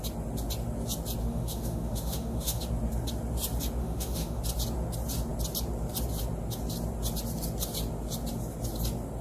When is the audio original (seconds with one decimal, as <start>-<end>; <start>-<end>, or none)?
0.0-1.2; 2.6-3.8; 4.4-9.2